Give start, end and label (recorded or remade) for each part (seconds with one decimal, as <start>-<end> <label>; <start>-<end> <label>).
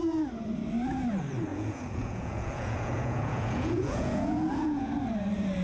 0.0-1.5 recorded; 1.5-4.9 remade; 4.9-5.6 recorded